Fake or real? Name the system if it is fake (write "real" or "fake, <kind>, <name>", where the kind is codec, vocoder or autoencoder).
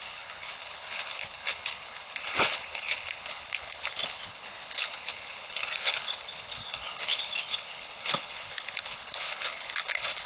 fake, codec, HILCodec